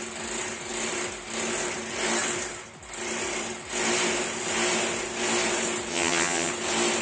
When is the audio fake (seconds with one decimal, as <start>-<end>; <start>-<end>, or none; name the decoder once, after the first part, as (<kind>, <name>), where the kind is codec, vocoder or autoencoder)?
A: 5.9-6.5 (vocoder, HiFi-GAN)